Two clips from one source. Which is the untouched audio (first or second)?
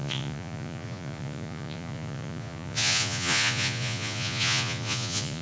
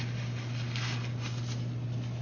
second